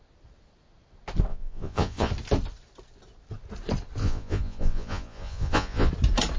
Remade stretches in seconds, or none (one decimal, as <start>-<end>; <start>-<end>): 1.3-2.1; 4.0-5.9